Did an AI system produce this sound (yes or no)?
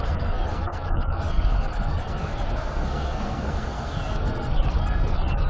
yes